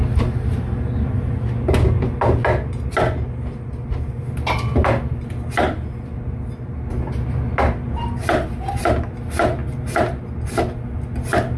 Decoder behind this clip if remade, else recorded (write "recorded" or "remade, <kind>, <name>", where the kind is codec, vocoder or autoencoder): recorded